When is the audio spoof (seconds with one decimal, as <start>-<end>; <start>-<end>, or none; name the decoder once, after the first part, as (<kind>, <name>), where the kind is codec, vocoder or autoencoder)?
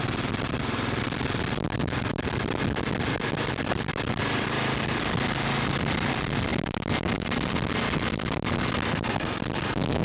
none